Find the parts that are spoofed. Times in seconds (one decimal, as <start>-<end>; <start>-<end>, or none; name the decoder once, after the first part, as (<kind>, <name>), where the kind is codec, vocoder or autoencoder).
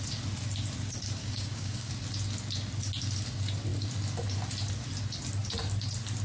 1.2-1.9 (codec, DAC)